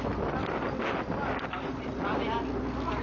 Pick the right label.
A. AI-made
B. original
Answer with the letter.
B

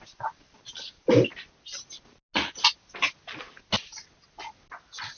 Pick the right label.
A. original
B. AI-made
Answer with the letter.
A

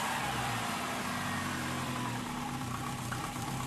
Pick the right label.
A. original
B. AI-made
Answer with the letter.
B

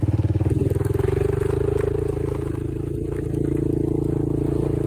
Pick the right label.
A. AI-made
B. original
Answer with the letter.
B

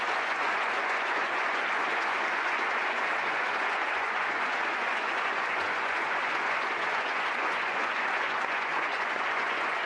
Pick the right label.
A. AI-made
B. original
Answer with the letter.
A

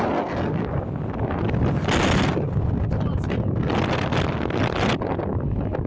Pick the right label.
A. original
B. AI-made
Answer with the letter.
A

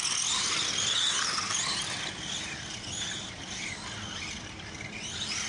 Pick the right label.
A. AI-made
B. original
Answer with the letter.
B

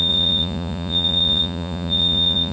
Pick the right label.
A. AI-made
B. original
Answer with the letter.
A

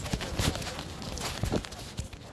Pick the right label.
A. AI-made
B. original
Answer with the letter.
B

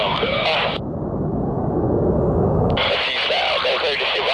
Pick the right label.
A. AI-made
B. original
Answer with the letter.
B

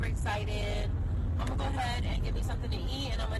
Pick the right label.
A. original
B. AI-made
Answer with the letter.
A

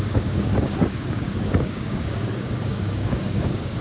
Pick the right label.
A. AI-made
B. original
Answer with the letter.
A